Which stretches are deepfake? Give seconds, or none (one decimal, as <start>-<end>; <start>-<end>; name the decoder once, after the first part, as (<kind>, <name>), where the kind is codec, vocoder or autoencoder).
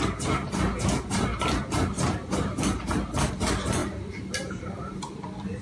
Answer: none